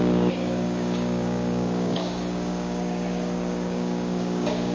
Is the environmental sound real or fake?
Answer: fake